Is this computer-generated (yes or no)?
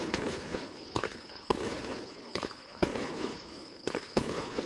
yes